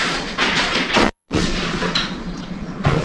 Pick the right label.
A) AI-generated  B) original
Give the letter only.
A